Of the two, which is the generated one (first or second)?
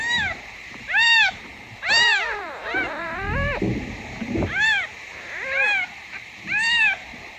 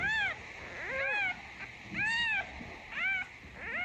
first